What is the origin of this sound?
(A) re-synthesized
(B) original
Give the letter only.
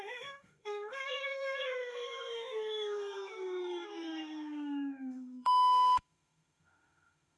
A